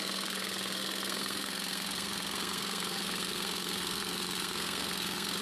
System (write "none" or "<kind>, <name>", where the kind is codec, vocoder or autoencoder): codec, SNAC